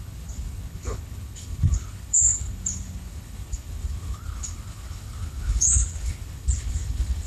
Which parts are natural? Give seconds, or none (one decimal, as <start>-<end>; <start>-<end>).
none